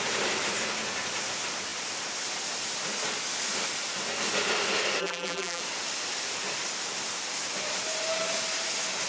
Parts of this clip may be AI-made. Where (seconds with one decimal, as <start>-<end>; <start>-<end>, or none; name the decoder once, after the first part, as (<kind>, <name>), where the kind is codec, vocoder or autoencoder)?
5.0-5.6 (vocoder, BigVGAN v2)